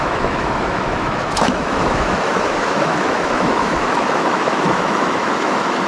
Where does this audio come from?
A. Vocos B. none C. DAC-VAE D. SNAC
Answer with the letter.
C